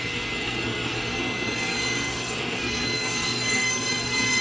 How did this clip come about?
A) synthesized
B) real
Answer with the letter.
A